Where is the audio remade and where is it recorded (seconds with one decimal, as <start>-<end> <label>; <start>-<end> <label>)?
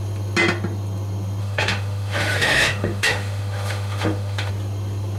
0.0-1.4 recorded; 1.4-4.5 remade; 4.5-5.2 recorded